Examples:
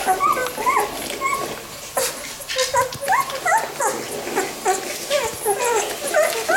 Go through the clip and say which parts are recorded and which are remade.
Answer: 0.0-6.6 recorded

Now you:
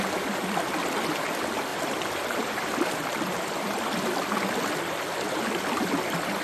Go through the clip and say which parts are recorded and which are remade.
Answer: 0.0-1.7 recorded; 1.7-3.4 remade; 3.4-6.4 recorded

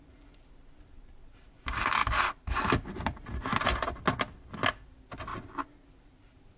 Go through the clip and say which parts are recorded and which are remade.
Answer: 0.0-2.0 recorded; 2.0-3.0 remade; 3.0-6.6 recorded

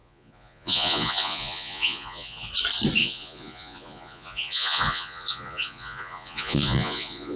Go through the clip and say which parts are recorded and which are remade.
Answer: 0.0-2.5 remade; 2.5-3.0 recorded; 3.0-7.4 remade

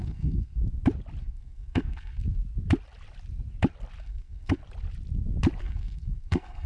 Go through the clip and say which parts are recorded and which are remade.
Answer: 0.0-0.6 remade; 0.6-1.2 recorded; 1.2-2.4 remade; 2.4-4.0 recorded; 4.0-4.6 remade; 4.6-5.6 recorded; 5.6-6.7 remade

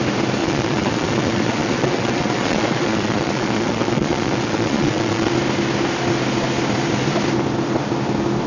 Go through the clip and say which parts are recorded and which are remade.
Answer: 0.0-0.4 recorded; 0.4-5.3 remade; 5.3-8.5 recorded

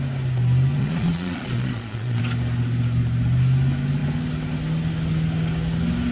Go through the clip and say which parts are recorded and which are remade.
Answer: 0.0-0.8 recorded; 0.8-2.2 remade; 2.2-6.1 recorded